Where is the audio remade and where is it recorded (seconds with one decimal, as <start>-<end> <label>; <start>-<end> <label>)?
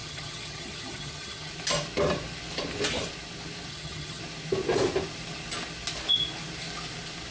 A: 0.0-1.5 remade; 1.5-3.7 recorded; 3.7-4.2 remade; 4.2-7.3 recorded